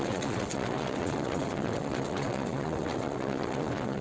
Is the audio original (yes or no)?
no